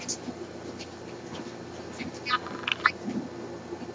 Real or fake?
real